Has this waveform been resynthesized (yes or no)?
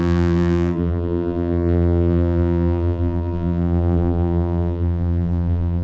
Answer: yes